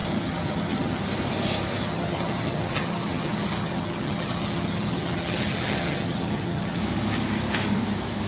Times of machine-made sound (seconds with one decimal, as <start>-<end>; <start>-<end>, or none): 0.0-1.0; 1.8-6.8